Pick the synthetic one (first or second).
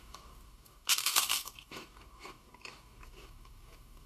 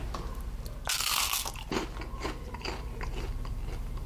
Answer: first